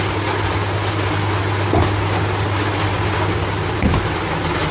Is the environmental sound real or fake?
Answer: real